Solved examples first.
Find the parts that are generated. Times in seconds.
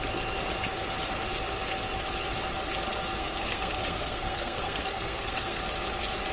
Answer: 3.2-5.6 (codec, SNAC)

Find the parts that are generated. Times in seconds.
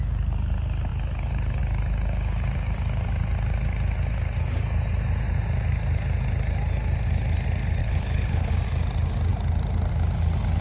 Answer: 7.8-8.5 (codec, HILCodec)